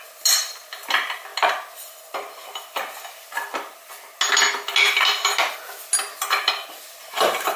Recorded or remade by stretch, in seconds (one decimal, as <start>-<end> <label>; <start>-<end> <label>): 0.0-7.6 recorded